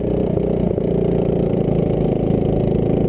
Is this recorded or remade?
recorded